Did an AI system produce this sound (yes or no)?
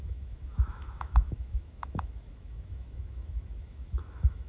yes